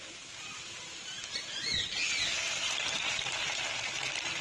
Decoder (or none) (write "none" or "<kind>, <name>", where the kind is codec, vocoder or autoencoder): none